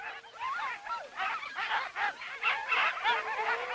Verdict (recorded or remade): recorded